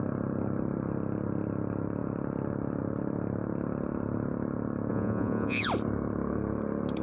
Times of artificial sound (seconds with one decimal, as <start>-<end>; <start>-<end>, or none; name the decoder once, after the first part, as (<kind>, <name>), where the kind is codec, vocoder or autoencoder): 4.9-5.7 (vocoder, Vocos)